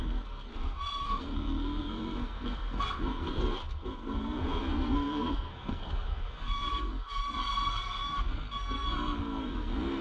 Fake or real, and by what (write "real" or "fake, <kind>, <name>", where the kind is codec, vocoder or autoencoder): fake, codec, SNAC